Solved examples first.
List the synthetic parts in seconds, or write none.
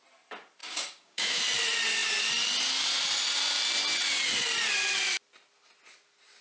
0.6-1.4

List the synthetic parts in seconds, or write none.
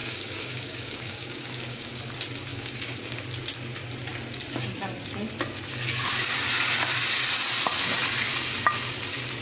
0.0-1.9; 2.5-3.2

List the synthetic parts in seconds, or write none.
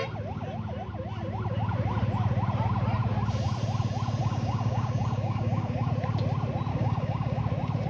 4.2-5.9; 6.7-7.4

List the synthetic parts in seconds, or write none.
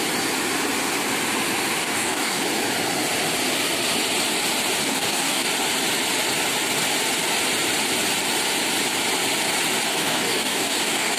1.8-2.4; 4.8-5.5; 9.9-11.2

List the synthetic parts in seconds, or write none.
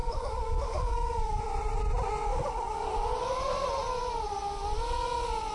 0.0-1.4; 2.3-2.9